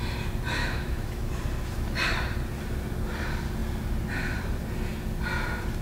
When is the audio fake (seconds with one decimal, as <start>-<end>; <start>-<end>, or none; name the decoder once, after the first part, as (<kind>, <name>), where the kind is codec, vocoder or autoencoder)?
0.6-1.3 (autoencoder, DAC-VAE)